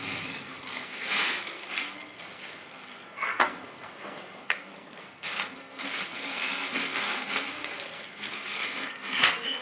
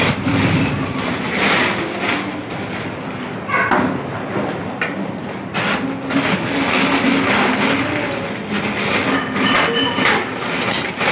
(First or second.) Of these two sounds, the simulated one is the first